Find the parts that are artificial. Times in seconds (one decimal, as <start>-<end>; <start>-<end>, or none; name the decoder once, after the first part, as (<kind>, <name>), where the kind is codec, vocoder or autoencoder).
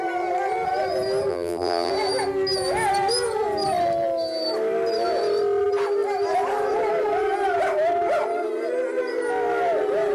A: 1.3-1.9 (vocoder, BigVGAN v2)